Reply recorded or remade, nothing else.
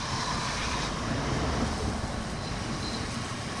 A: remade